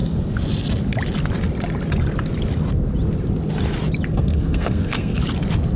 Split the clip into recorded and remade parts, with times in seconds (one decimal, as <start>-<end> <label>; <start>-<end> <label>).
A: 0.0-4.1 recorded; 4.1-5.2 remade; 5.2-5.8 recorded